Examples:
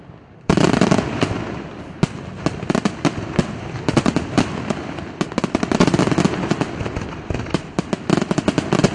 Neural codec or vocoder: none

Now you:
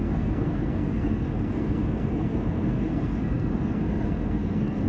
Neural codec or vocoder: codec, SNAC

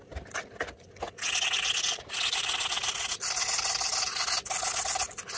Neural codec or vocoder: none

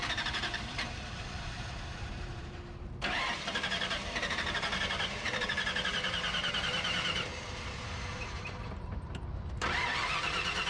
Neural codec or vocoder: vocoder, BigVGAN v2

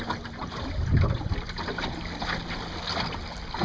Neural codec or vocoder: none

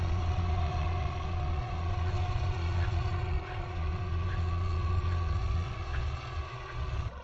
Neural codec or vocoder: vocoder, Vocos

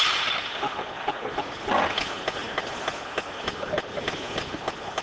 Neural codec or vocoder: none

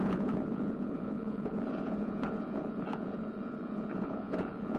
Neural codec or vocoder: vocoder, Vocos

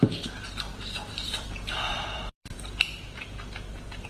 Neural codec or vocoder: vocoder, BigVGAN v2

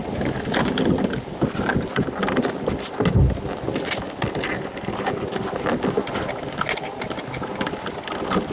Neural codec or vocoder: none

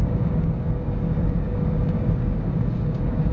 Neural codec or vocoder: codec, DAC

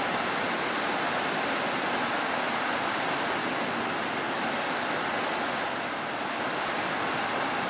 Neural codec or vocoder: none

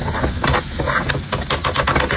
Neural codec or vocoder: none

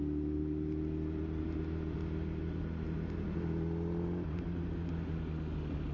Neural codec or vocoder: none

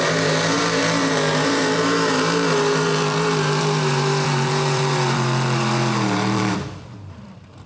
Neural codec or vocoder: vocoder, BigVGAN v2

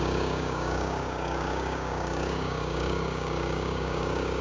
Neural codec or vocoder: codec, DAC